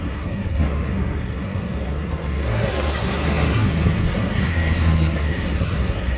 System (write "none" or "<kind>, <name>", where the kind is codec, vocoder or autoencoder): codec, SNAC